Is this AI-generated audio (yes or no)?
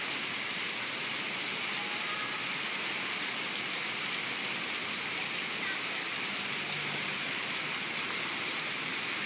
no